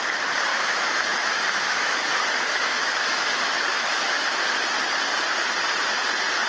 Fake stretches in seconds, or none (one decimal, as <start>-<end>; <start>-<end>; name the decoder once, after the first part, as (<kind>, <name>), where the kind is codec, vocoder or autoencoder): 0.5-4.4 (autoencoder, DAC-VAE)